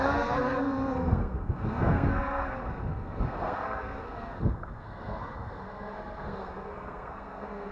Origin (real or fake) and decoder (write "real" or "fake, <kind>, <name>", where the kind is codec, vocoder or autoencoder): fake, codec, SNAC